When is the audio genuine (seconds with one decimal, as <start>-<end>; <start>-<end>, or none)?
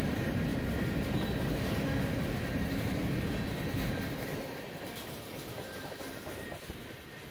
none